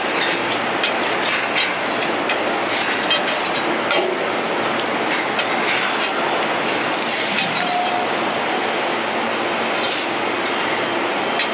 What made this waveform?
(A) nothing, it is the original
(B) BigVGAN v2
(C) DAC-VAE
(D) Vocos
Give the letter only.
A